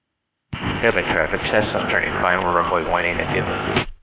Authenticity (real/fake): fake